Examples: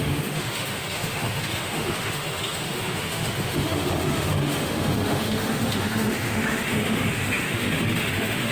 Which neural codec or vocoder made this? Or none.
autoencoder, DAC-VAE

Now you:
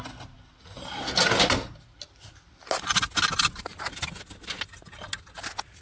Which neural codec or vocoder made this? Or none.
none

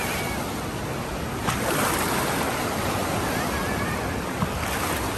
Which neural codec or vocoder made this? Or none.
none